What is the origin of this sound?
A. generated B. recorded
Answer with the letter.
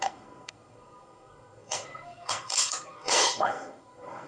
A